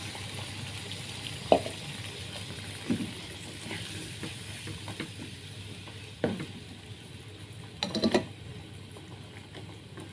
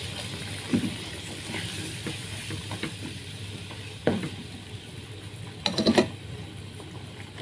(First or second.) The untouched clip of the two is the first